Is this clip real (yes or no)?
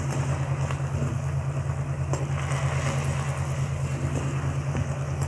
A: yes